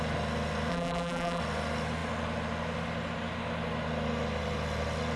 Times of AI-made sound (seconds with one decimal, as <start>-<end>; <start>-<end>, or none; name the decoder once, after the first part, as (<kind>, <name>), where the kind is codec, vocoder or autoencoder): 0.7-1.4 (vocoder, BigVGAN v2)